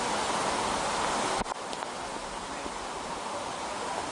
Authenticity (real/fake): real